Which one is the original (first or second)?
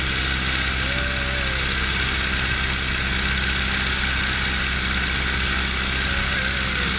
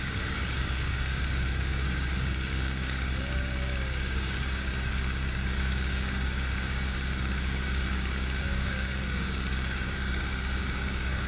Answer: first